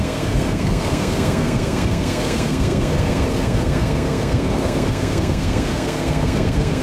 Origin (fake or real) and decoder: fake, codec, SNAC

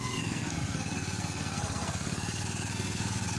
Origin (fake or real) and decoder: fake, codec, SNAC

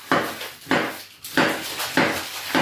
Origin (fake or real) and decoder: real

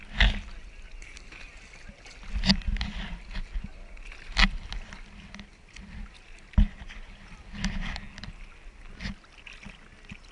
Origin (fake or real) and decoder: real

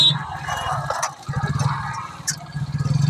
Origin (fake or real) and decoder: real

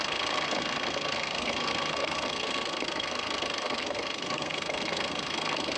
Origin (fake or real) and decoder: fake, codec, SNAC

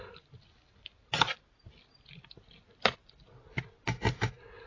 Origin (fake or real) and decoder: real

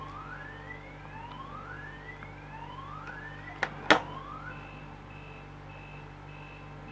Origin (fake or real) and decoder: real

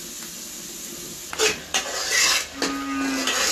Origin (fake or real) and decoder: real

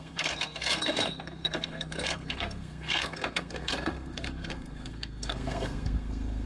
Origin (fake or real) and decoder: fake, codec, SNAC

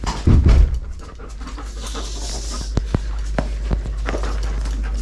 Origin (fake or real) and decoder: real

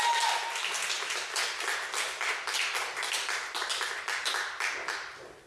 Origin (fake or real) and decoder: real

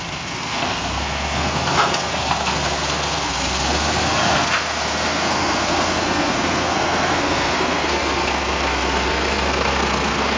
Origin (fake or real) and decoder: fake, codec, SNAC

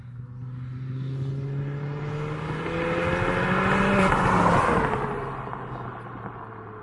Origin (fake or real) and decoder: real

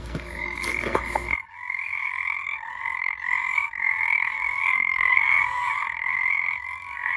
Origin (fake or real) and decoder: fake, codec, SNAC